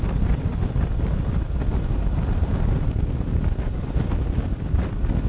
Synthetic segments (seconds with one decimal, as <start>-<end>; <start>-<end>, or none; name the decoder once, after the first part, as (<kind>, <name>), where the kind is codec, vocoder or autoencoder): none